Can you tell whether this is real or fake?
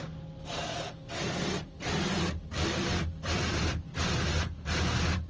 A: real